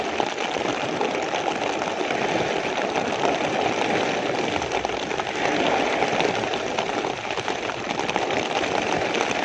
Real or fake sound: real